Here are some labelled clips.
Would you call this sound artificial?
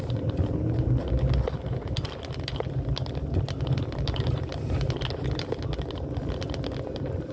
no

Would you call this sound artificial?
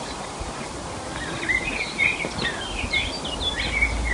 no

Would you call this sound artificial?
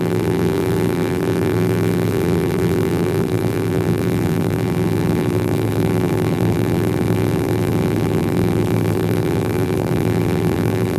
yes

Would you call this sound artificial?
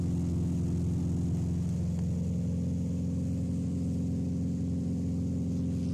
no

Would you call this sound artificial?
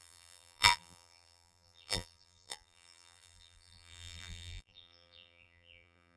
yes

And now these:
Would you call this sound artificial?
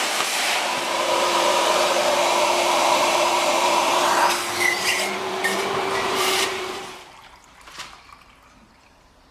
yes